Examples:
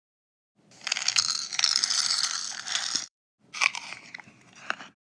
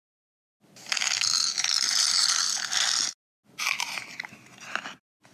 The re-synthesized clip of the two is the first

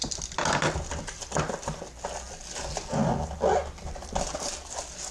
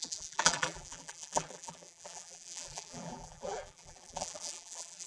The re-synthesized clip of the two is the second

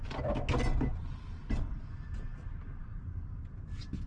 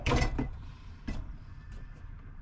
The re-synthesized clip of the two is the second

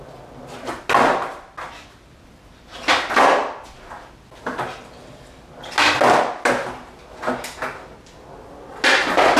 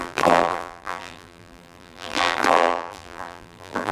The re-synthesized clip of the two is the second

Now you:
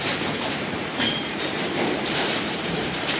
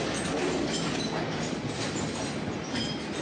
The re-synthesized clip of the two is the first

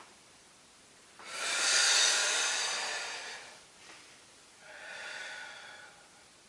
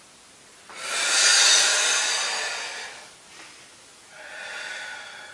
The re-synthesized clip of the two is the first